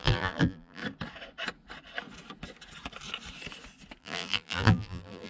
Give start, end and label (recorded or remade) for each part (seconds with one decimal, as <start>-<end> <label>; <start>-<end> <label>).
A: 0.0-0.8 remade; 0.8-4.0 recorded; 4.0-5.3 remade

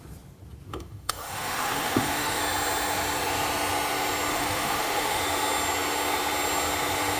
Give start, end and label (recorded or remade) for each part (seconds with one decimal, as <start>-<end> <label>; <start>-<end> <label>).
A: 0.0-0.7 recorded; 0.7-2.4 remade; 2.4-4.3 recorded; 4.3-5.2 remade; 5.2-7.2 recorded

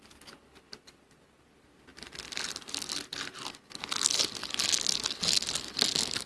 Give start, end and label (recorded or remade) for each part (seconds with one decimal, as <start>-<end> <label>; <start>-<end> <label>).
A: 0.0-6.3 recorded

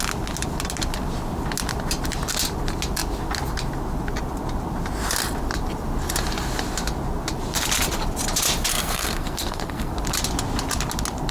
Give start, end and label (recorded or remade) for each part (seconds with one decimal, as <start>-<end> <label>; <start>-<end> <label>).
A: 0.0-8.7 recorded; 8.7-9.9 remade; 9.9-11.3 recorded